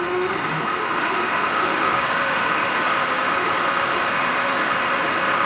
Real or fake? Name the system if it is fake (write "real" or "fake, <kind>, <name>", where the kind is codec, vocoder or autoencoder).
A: fake, autoencoder, DAC-VAE